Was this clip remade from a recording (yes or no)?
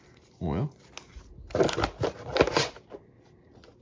no